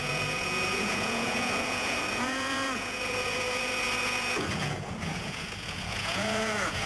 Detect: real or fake fake